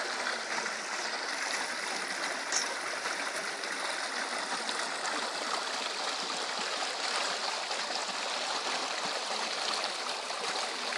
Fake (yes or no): no